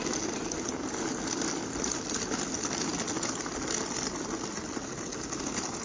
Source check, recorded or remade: recorded